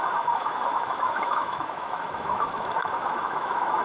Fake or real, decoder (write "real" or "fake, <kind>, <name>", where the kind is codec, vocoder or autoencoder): fake, autoencoder, DAC-VAE